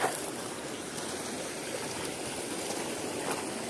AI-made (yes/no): no